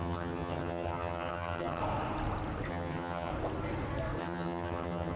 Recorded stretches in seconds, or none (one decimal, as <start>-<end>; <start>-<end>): 1.8-2.7; 3.3-4.2